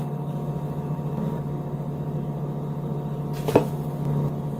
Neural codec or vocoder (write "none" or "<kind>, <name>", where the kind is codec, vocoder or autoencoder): vocoder, BigVGAN v2